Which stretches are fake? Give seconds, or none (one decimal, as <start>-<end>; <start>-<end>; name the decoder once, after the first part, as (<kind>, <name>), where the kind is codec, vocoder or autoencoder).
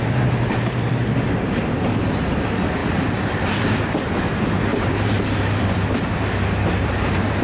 0.0-0.9 (vocoder, BigVGAN v2); 4.7-7.4